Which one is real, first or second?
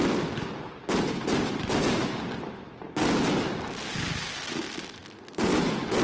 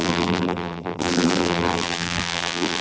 first